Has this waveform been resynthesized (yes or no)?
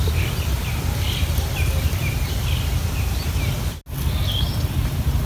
no